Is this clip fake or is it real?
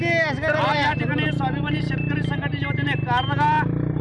real